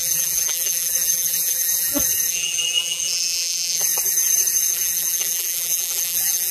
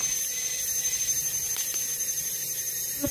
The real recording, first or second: second